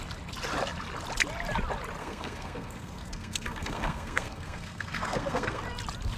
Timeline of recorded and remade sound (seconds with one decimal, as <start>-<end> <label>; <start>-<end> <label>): 0.0-2.0 recorded; 2.0-5.6 remade; 5.6-6.2 recorded